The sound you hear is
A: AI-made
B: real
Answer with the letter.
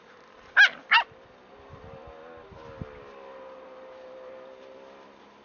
B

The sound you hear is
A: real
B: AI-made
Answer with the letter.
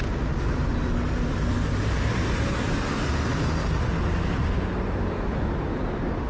A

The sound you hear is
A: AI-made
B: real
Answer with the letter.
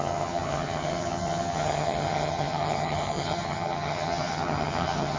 A